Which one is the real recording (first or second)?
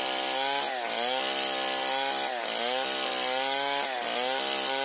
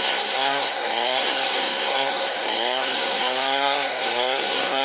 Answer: first